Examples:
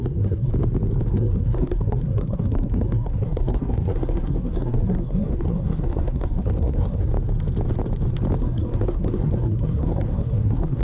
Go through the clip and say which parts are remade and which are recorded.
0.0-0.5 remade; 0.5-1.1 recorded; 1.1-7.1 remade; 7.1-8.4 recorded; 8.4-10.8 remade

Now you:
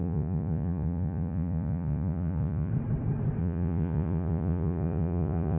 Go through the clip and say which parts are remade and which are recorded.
0.0-2.7 remade; 2.7-3.4 recorded; 3.4-5.6 remade

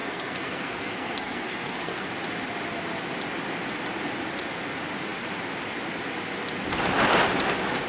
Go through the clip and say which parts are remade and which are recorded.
0.0-2.1 remade; 2.1-7.9 recorded

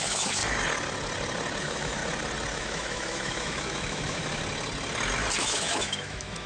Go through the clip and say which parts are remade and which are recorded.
0.0-0.4 remade; 0.4-1.6 recorded; 1.6-2.0 remade; 2.0-2.5 recorded; 2.5-4.4 remade; 4.4-5.4 recorded; 5.4-6.5 remade

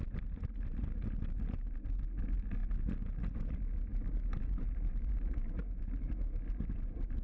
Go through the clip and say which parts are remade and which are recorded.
0.0-3.9 recorded; 3.9-5.6 remade; 5.6-7.2 recorded

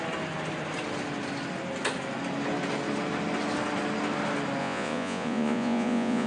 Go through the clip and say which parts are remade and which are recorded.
0.0-4.6 recorded; 4.6-6.3 remade